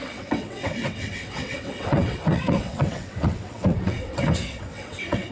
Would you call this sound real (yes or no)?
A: no